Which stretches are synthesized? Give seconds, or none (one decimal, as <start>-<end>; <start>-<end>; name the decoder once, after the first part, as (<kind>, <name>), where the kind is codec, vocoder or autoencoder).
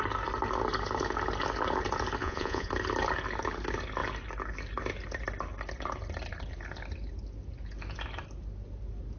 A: 2.2-2.7 (vocoder, Vocos)